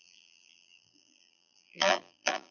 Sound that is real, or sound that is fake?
fake